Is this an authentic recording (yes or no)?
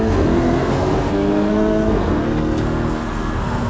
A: no